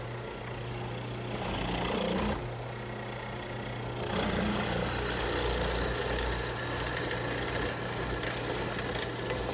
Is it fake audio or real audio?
real